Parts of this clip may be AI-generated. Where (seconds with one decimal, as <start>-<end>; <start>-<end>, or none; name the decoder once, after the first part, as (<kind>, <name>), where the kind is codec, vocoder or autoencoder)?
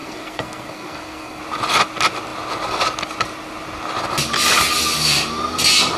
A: 0.0-1.4 (codec, SNAC)